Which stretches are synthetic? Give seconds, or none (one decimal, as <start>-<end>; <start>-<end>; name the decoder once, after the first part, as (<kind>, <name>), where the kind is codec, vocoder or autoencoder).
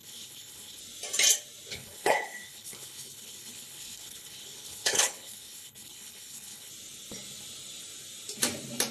0.0-0.8 (codec, HILCodec); 1.7-6.7